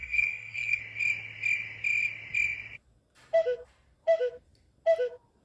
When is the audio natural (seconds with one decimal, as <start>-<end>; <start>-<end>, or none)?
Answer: 0.8-5.4